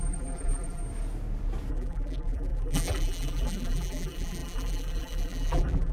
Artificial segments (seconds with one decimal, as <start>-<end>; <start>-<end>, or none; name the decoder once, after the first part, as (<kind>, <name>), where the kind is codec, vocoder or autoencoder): 0.0-0.8 (vocoder, BigVGAN v2); 1.7-5.9